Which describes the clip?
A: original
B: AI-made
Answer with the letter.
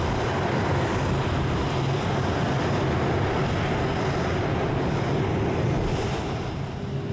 A